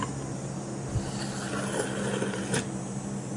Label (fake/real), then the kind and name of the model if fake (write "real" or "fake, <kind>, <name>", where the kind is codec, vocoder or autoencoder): real